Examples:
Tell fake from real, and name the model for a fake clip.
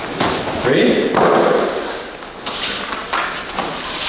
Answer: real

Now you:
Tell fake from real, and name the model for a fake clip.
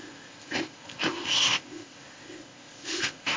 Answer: fake, codec, ZipCodec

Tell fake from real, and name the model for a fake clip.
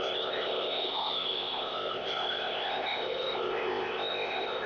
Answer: fake, codec, ZipCodec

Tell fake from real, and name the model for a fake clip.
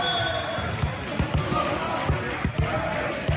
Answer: real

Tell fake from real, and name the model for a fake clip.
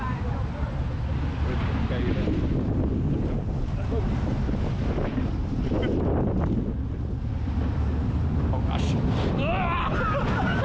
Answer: real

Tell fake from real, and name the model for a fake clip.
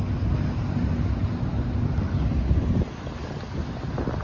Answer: real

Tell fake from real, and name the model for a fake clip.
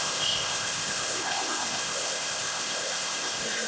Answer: fake, codec, ZipCodec